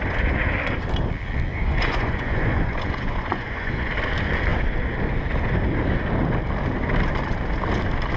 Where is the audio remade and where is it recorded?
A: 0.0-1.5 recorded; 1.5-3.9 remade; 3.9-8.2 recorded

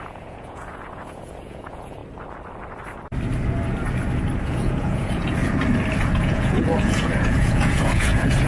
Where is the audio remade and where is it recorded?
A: 0.0-2.0 remade; 2.0-4.4 recorded; 4.4-5.4 remade; 5.4-6.0 recorded; 6.0-8.5 remade

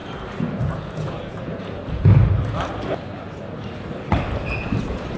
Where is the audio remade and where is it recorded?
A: 0.0-0.6 recorded; 0.6-2.2 remade; 2.2-5.2 recorded

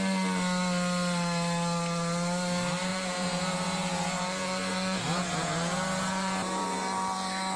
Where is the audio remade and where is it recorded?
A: 0.0-2.9 recorded; 2.9-6.6 remade; 6.6-7.6 recorded

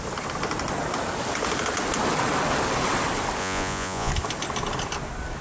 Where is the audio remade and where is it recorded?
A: 0.0-3.4 recorded; 3.4-4.1 remade; 4.1-5.4 recorded

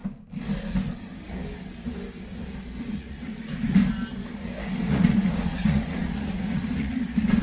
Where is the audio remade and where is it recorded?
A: 0.0-2.8 recorded; 2.8-3.8 remade; 3.8-4.9 recorded; 4.9-7.4 remade

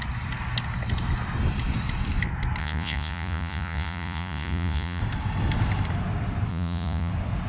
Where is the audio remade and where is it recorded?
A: 0.0-2.6 recorded; 2.6-5.0 remade; 5.0-6.5 recorded; 6.5-7.1 remade; 7.1-7.5 recorded

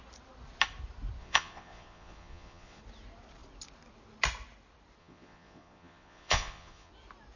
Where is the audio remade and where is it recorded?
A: 0.0-1.2 recorded; 1.2-2.8 remade; 2.8-5.0 recorded; 5.0-6.9 remade; 6.9-7.4 recorded